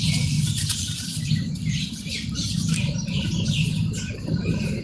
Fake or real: real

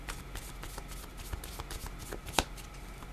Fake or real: real